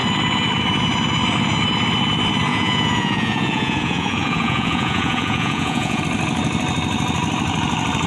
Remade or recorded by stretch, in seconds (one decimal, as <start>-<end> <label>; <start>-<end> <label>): 0.0-2.5 recorded; 2.5-6.0 remade; 6.0-8.1 recorded